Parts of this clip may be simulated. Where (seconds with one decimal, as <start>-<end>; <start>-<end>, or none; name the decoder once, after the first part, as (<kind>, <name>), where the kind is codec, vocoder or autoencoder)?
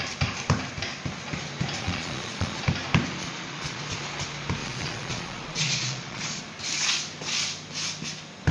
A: 1.8-2.6 (vocoder, Vocos); 3.2-3.8; 4.6-6.4